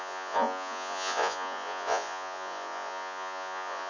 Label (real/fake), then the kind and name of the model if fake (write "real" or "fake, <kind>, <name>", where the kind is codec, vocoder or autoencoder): fake, vocoder, Vocos